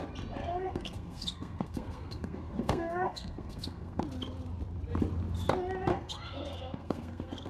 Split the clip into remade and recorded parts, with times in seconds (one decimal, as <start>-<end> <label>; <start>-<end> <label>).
0.0-0.4 recorded; 0.4-4.0 remade; 4.0-5.9 recorded; 5.9-7.5 remade